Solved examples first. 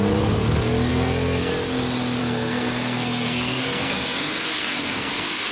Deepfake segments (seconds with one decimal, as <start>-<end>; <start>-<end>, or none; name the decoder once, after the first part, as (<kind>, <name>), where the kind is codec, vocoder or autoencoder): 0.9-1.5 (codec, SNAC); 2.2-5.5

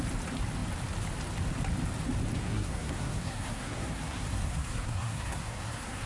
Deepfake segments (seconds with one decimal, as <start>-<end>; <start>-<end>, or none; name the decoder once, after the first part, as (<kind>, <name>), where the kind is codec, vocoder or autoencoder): 2.4-6.1 (codec, SNAC)

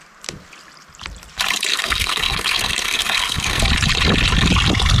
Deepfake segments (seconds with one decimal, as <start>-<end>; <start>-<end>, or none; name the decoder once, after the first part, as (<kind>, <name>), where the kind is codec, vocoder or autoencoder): 1.7-3.6 (codec, SNAC)

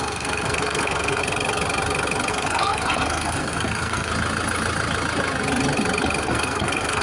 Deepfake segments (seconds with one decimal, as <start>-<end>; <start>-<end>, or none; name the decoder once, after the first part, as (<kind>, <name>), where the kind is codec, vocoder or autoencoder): 0.0-1.2 (codec, SNAC); 2.3-4.1; 6.2-7.0

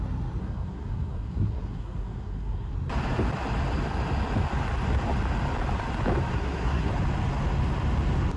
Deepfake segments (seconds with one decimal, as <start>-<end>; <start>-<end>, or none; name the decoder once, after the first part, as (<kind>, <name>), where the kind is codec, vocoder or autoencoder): 0.4-2.7 (codec, SNAC); 6.3-6.9

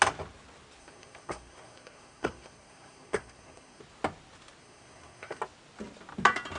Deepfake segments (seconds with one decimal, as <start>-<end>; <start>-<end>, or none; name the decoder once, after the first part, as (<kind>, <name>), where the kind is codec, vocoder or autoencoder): 0.8-3.8 (codec, SNAC); 4.6-5.4

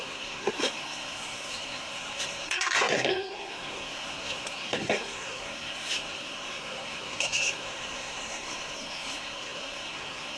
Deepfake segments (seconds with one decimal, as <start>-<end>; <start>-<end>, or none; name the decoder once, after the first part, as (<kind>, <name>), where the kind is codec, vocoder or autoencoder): 0.0-10.4 (codec, SNAC)